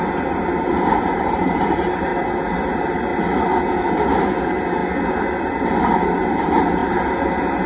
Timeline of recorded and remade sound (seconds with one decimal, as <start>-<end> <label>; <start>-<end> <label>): 0.0-2.1 remade; 2.1-2.6 recorded; 2.6-3.1 remade; 3.1-4.1 recorded; 4.1-4.8 remade; 4.8-5.4 recorded; 5.4-7.7 remade